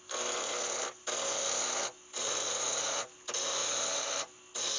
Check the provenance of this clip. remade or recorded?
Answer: recorded